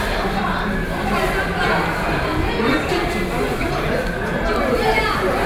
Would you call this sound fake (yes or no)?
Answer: no